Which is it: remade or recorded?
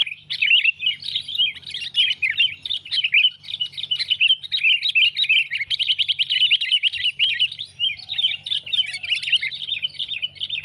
recorded